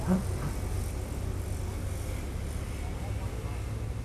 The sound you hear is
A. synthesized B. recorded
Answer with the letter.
B